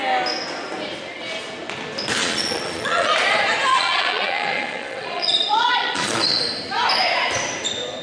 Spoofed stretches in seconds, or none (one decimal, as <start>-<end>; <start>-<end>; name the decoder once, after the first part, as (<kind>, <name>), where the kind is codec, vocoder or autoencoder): 2.2-3.1 (vocoder, Vocos); 3.7-6.4